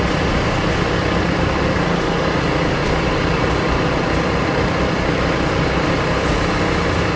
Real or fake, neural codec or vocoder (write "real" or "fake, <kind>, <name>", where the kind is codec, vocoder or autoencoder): real